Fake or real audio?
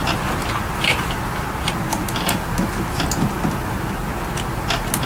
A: real